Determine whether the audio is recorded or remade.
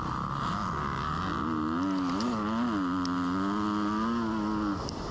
recorded